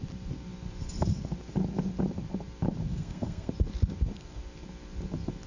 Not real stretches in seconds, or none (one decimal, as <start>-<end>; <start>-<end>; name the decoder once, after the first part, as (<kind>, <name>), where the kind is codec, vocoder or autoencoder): 2.9-3.5 (codec, SNAC)